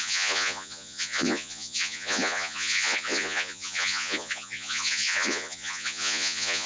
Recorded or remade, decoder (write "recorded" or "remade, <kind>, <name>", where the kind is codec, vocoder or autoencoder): remade, vocoder, Vocos